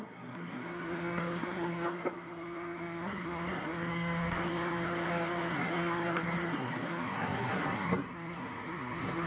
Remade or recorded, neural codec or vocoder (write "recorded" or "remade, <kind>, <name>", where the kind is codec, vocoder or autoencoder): remade, codec, SNAC